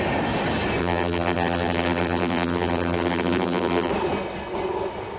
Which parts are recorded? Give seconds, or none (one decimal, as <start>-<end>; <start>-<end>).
0.0-0.8; 3.9-5.2